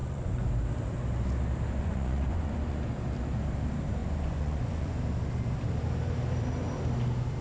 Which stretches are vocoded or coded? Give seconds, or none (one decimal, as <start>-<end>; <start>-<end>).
0.0-0.5; 1.8-2.8; 4.0-5.0

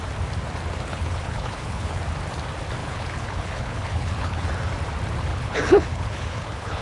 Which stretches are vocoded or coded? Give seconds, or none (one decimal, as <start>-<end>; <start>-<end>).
0.9-2.0; 2.8-4.5; 5.3-6.8

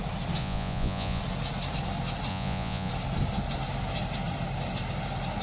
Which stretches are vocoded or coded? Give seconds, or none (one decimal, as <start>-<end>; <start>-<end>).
0.4-1.2; 2.3-2.9

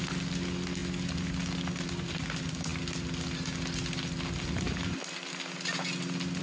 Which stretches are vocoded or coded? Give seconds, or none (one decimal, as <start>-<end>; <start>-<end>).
none